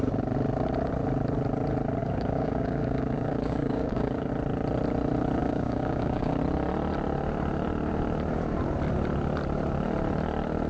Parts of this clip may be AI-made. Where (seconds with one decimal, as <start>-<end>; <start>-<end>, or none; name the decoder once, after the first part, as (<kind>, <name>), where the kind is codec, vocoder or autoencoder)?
2.0-4.3 (codec, DAC); 5.4-6.4